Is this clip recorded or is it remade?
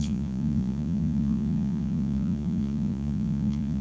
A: remade